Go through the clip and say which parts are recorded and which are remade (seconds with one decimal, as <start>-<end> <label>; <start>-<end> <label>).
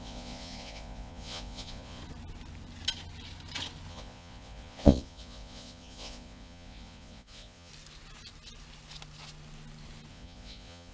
0.0-2.0 remade; 2.0-3.9 recorded; 3.9-7.7 remade; 7.7-10.1 recorded; 10.1-10.9 remade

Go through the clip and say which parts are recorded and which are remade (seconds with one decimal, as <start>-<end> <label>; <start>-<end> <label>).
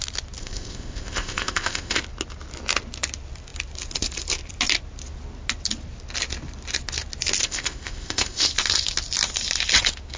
0.0-0.4 recorded; 0.4-2.0 remade; 2.0-7.4 recorded; 7.4-8.5 remade; 8.5-10.2 recorded